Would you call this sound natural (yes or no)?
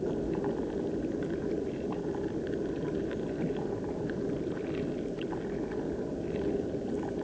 yes